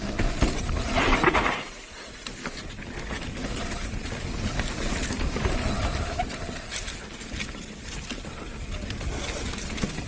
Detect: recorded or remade recorded